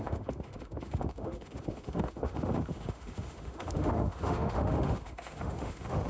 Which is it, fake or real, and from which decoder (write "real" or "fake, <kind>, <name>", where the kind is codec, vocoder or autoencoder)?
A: fake, autoencoder, DAC-VAE